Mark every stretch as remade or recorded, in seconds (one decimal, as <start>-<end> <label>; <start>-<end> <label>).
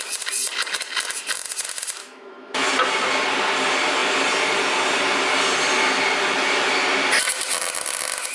0.0-2.0 recorded; 2.0-2.7 remade; 2.7-8.3 recorded